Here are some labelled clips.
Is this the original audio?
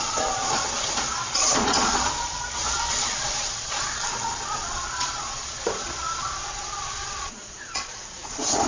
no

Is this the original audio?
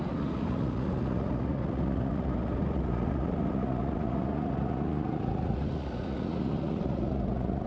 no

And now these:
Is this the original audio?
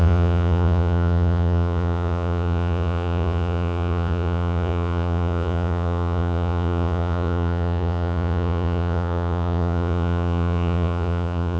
no